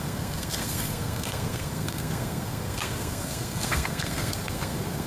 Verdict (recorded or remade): remade